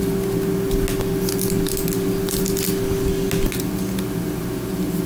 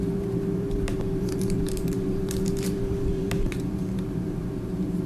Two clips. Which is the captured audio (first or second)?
first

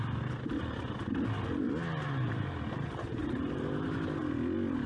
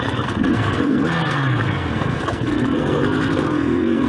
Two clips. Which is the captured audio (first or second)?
first